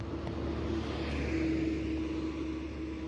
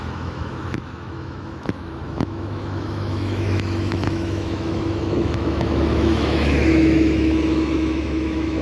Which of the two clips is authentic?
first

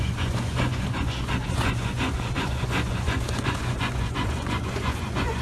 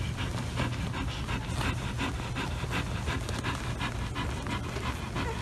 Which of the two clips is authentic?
second